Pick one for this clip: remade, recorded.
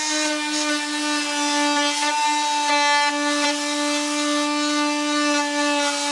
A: recorded